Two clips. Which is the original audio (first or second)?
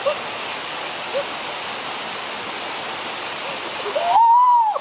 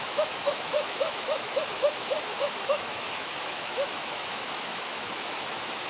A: first